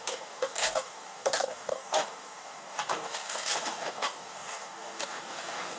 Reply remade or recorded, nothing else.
remade